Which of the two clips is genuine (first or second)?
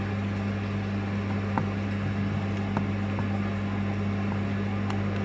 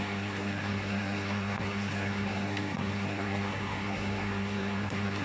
first